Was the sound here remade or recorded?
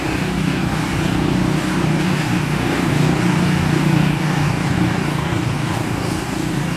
remade